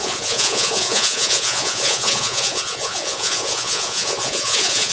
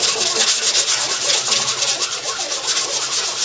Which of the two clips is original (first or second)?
second